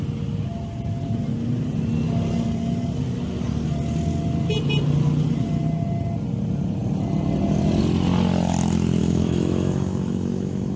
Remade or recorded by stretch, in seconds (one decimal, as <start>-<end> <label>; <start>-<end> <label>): 0.0-9.0 recorded; 9.0-10.8 remade